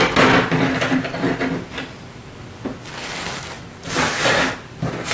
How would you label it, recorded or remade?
recorded